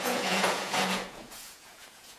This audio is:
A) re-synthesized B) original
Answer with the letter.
A